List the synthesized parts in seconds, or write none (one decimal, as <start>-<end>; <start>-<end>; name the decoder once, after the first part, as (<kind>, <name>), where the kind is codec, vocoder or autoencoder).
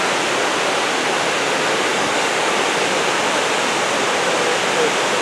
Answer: 1.9-2.5 (codec, DAC)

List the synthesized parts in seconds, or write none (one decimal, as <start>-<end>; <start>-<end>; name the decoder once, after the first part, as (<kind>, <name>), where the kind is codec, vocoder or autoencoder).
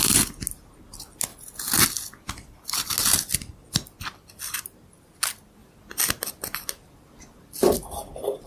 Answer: none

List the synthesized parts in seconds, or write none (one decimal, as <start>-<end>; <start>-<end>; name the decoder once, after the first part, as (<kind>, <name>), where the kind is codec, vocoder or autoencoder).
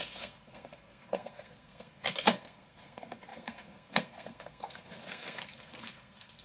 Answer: 0.0-6.4 (codec, SNAC)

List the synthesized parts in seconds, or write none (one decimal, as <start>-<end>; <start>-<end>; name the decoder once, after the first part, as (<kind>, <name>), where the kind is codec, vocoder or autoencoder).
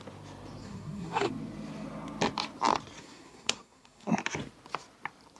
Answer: 0.6-1.3 (codec, SNAC); 3.0-4.1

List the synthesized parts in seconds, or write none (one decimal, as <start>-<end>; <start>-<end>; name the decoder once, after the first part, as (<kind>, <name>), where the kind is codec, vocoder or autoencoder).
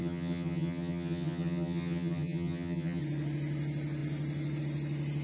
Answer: 0.0-3.0 (vocoder, HiFi-GAN)